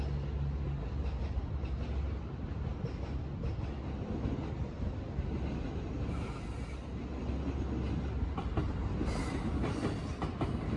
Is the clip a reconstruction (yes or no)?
no